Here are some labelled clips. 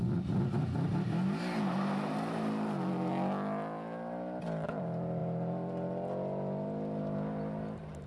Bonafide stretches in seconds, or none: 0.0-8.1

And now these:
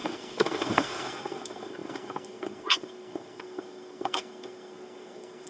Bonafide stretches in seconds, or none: none

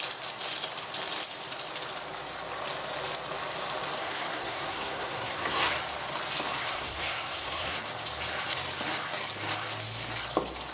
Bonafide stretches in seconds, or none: 0.0-4.0; 5.7-6.6; 7.8-10.7